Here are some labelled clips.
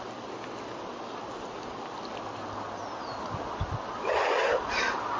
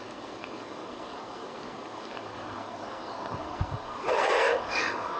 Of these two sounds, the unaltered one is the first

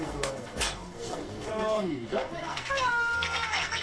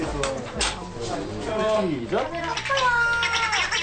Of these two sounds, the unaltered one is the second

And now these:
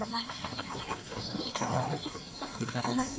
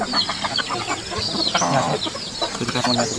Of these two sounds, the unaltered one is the second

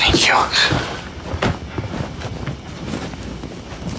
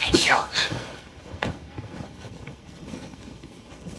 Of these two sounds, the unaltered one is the first